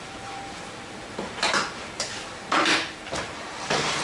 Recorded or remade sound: remade